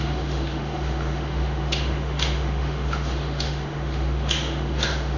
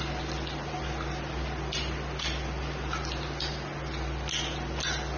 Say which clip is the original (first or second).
second